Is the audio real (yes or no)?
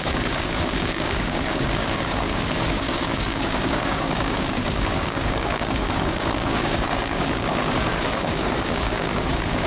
no